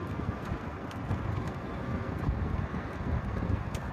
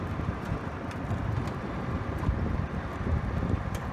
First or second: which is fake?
first